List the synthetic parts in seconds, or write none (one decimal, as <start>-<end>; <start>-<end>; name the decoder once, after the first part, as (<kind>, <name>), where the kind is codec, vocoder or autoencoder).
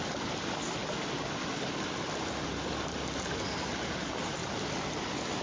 none